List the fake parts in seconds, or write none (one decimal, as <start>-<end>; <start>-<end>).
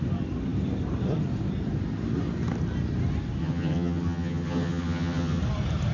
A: 3.4-5.4